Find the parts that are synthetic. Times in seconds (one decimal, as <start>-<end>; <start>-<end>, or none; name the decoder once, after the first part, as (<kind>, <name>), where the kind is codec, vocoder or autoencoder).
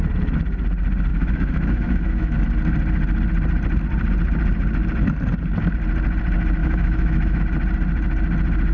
1.1-2.4 (autoencoder, DAC-VAE); 6.6-7.4